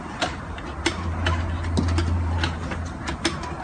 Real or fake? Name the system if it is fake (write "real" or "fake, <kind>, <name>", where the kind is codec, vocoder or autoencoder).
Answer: real